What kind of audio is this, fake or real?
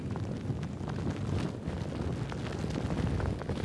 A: real